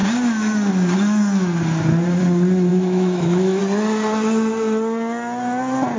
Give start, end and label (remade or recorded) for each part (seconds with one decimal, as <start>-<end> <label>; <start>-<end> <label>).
0.0-2.7 recorded; 2.7-3.6 remade; 3.6-6.0 recorded

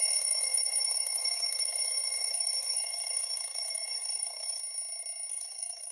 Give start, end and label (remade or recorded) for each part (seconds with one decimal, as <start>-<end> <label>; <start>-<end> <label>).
0.0-4.6 remade; 4.6-5.3 recorded; 5.3-5.9 remade

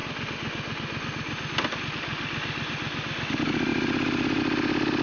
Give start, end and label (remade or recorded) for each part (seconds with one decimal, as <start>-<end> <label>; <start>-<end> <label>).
0.0-5.0 recorded

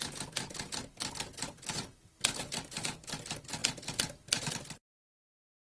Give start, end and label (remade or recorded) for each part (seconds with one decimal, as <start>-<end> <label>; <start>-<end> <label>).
0.0-5.7 recorded

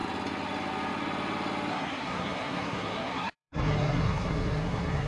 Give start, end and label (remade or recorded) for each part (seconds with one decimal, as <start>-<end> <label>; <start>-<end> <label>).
0.0-1.7 recorded; 1.7-5.1 remade